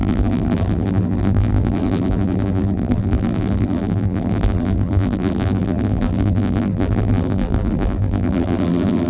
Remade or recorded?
remade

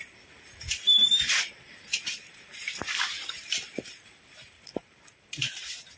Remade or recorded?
remade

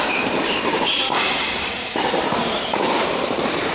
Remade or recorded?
remade